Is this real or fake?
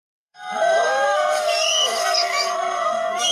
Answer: fake